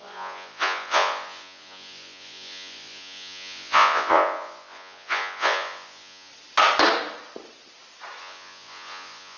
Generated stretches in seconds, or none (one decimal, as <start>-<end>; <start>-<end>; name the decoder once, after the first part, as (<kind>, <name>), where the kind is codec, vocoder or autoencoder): 0.0-6.3 (vocoder, Vocos); 8.2-9.4